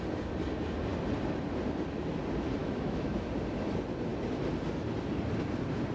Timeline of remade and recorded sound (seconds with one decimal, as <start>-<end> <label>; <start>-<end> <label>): 0.0-2.6 recorded; 2.6-3.1 remade; 3.1-5.9 recorded